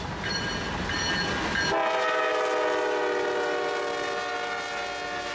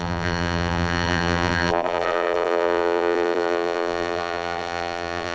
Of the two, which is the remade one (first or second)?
second